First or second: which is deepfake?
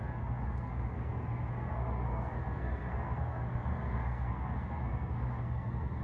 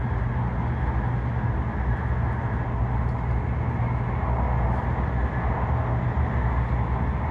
first